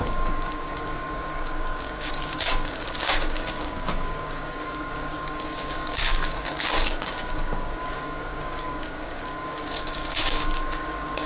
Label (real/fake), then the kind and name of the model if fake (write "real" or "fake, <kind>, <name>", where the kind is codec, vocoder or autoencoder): fake, codec, DAC